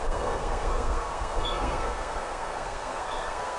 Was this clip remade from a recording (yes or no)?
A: yes